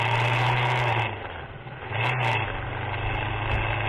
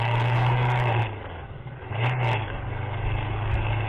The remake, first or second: second